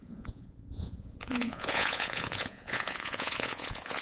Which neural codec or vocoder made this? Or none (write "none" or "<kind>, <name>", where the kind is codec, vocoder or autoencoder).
vocoder, Vocos